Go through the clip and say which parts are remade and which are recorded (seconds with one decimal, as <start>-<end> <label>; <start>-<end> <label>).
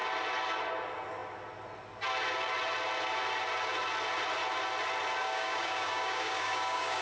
0.0-5.2 recorded; 5.2-7.0 remade